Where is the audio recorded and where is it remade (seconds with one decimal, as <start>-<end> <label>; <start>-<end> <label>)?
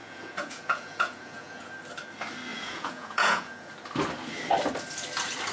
0.0-1.7 remade; 1.7-2.5 recorded; 2.5-3.7 remade; 3.7-5.5 recorded